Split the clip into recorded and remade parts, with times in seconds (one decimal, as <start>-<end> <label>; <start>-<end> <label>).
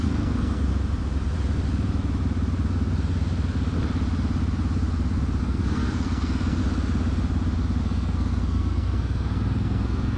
0.0-0.7 remade; 0.7-5.4 recorded; 5.4-6.6 remade; 6.6-7.8 recorded; 7.8-10.2 remade